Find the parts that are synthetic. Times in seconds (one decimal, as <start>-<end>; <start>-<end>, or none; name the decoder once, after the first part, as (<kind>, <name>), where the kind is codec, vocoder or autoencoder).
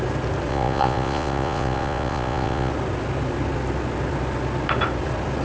0.5-2.7 (vocoder, Vocos)